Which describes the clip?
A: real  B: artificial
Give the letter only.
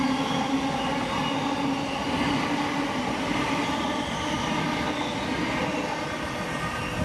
A